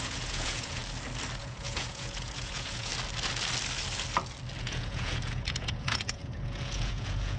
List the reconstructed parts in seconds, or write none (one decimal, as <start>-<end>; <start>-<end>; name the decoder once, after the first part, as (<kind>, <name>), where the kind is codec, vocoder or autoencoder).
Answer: 0.0-0.8 (vocoder, Vocos); 1.4-2.9; 4.6-7.4

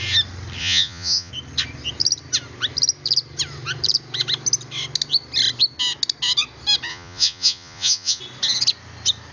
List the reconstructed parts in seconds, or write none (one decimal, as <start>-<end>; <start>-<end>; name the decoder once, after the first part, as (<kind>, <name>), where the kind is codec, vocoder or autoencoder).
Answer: 0.6-1.3 (vocoder, Vocos); 6.9-8.2

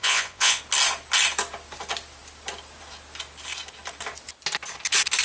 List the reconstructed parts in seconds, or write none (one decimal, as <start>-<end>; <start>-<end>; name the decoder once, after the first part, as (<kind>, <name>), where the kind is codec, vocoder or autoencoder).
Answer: 0.0-0.6 (vocoder, Vocos)

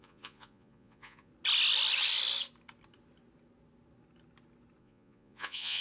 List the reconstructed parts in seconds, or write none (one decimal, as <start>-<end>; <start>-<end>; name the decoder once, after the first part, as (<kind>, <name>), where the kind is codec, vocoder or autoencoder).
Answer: 0.0-1.3 (vocoder, Vocos); 4.8-5.8

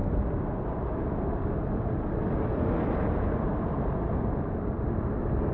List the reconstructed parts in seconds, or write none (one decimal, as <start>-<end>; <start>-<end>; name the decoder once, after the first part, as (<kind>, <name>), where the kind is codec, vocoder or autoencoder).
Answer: none

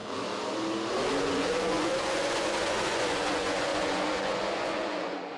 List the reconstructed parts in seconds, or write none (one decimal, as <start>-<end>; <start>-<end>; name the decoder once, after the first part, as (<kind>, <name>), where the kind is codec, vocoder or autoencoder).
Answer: 1.2-5.4 (vocoder, Vocos)

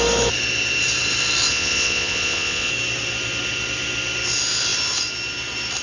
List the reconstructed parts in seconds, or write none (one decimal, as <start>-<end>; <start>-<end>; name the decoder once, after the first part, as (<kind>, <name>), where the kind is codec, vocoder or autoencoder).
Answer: 1.5-2.7 (vocoder, Vocos)